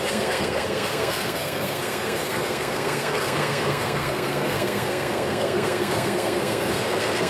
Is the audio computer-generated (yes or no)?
yes